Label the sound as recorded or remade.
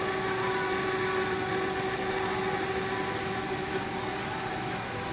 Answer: recorded